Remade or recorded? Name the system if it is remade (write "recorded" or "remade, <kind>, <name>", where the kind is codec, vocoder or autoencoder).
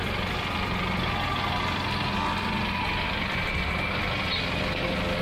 recorded